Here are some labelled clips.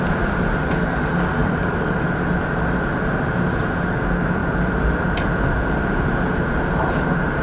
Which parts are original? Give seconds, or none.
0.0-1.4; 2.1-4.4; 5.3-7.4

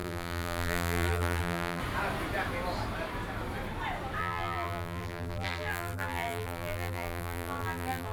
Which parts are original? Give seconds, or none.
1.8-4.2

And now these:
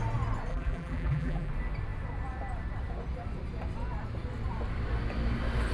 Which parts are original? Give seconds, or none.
0.0-0.5; 1.5-5.7

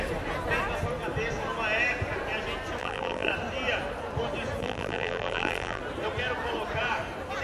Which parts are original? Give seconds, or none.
0.0-2.8; 3.3-4.6; 5.8-7.4

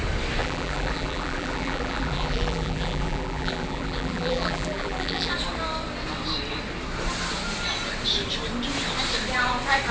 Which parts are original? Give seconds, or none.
0.0-0.4; 5.3-9.9

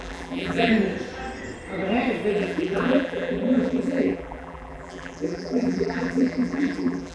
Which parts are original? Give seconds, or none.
0.7-2.3

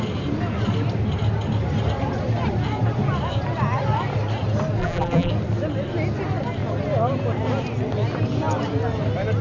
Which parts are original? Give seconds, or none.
0.0-4.8; 5.3-9.4

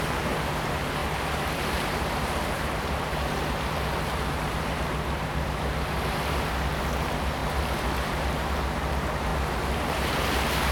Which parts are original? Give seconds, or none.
none